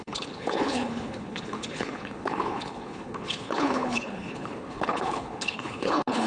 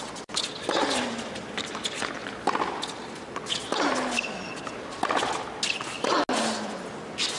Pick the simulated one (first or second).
first